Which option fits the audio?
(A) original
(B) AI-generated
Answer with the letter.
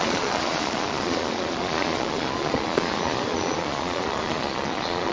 B